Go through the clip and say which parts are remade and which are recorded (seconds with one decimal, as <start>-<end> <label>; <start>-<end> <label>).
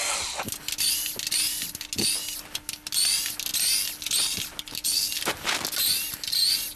0.0-6.8 recorded